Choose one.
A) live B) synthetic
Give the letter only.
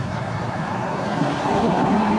B